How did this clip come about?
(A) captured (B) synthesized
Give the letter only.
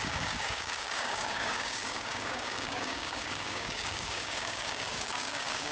B